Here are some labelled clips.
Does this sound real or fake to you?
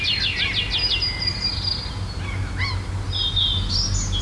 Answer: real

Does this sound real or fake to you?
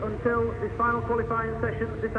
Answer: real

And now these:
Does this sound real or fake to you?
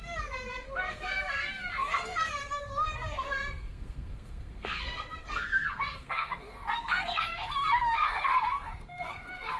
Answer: fake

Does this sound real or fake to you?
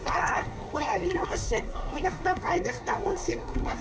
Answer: fake